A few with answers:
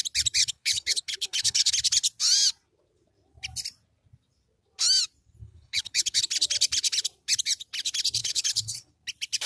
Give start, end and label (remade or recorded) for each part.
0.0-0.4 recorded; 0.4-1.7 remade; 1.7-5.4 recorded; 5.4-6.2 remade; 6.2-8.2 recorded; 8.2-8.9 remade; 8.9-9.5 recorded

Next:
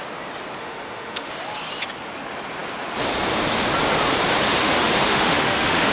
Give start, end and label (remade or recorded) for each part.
0.0-0.6 recorded; 0.6-1.3 remade; 1.3-4.6 recorded; 4.6-5.9 remade

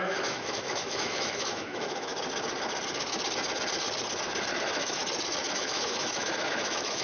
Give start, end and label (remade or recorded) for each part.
0.0-2.1 remade; 2.1-4.6 recorded; 4.6-5.0 remade; 5.0-5.5 recorded; 5.5-7.0 remade

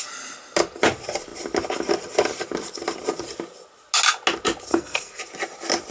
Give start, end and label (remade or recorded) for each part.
0.0-4.7 recorded; 4.7-5.2 remade; 5.2-5.9 recorded

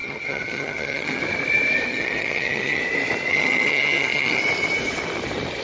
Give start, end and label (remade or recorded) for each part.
0.0-1.2 remade; 1.2-1.9 recorded; 1.9-2.8 remade; 2.8-3.3 recorded; 3.3-4.4 remade; 4.4-5.6 recorded

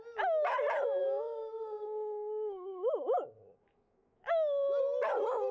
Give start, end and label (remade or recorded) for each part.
0.0-1.0 recorded; 1.0-4.3 remade; 4.3-5.5 recorded

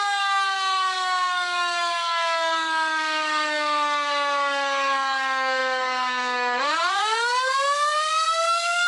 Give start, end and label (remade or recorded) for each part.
0.0-8.9 remade